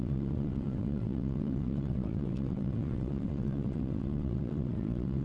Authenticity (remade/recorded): remade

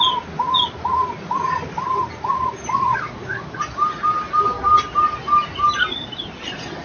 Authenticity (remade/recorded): recorded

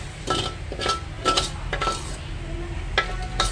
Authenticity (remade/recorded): recorded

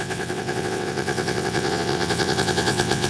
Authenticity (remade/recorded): remade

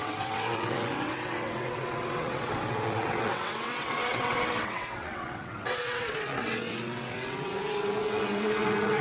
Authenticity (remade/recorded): remade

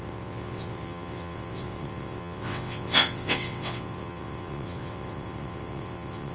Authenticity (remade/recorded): remade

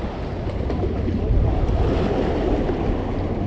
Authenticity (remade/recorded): recorded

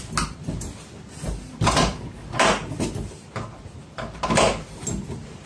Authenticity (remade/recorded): recorded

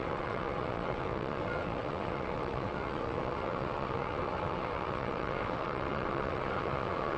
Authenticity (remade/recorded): remade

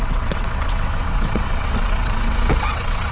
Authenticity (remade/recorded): remade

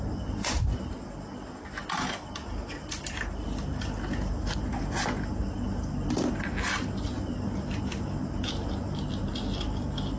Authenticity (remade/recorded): recorded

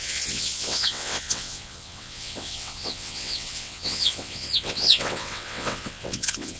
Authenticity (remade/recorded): remade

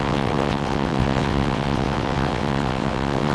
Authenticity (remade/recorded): remade